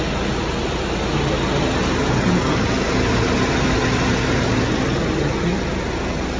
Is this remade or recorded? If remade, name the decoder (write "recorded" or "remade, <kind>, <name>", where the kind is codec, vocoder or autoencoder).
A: recorded